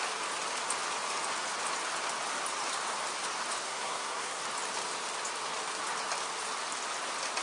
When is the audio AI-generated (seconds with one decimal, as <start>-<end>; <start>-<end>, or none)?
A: 3.6-4.4